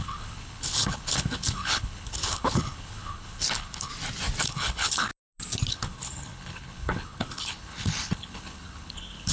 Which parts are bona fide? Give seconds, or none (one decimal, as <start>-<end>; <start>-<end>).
3.9-4.4; 5.1-5.7